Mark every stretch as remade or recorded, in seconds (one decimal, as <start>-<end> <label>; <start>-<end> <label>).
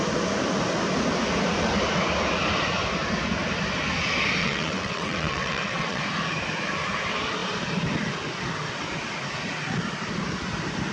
0.0-4.4 recorded; 4.4-6.0 remade; 6.0-10.9 recorded